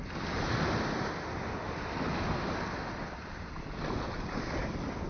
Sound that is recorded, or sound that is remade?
recorded